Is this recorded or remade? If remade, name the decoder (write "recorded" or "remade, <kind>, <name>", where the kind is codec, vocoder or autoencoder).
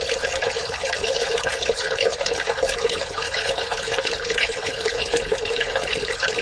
remade, codec, HILCodec